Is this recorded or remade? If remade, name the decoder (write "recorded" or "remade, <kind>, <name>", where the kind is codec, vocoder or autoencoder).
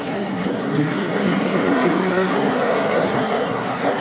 remade, codec, SNAC